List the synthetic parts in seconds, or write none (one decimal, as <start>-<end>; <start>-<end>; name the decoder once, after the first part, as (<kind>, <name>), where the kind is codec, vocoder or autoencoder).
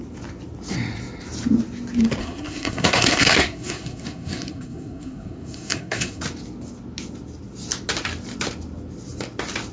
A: 2.2-6.2 (codec, SNAC)